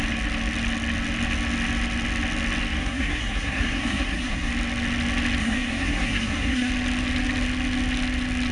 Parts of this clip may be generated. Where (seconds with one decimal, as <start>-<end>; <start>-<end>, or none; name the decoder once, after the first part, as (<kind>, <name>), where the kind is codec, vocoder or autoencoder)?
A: 2.8-4.5 (codec, SNAC); 5.4-6.7